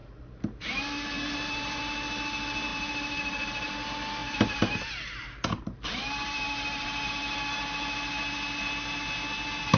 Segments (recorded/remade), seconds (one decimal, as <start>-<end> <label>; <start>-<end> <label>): 0.0-1.8 remade; 1.8-2.7 recorded; 2.7-3.7 remade; 3.7-4.2 recorded; 4.2-7.1 remade; 7.1-9.8 recorded